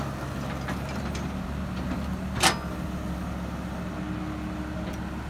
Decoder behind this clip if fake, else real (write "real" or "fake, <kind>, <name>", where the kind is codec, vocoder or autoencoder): real